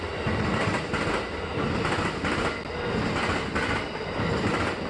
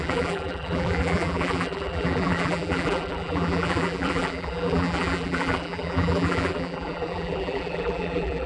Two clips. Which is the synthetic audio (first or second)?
second